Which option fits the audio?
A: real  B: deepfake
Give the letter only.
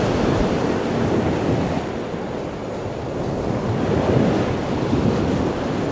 A